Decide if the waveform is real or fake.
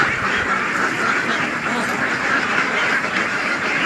fake